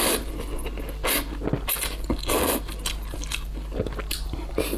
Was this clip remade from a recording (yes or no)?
no